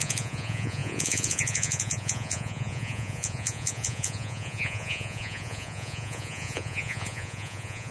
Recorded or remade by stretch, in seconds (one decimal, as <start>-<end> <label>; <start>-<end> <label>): 0.0-7.9 remade